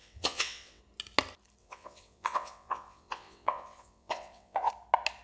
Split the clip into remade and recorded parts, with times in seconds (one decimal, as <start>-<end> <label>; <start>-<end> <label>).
0.0-0.8 remade; 0.8-1.6 recorded; 1.6-4.7 remade; 4.7-5.2 recorded